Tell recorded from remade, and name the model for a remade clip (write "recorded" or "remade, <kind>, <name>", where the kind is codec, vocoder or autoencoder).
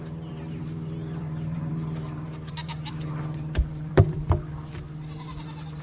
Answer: remade, vocoder, BigVGAN v2